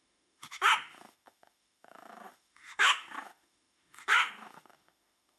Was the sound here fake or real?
fake